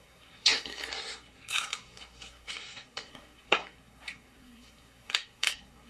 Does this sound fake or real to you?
fake